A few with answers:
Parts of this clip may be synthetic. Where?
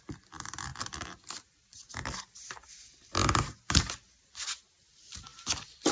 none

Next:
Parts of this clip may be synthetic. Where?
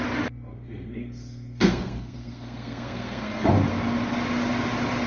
0.5-3.5